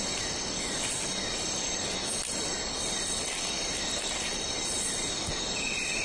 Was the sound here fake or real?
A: real